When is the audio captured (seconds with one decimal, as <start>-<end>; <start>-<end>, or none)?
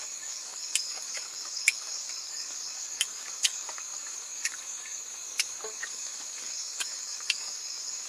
none